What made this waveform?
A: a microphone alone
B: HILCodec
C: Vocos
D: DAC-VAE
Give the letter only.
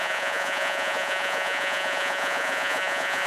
C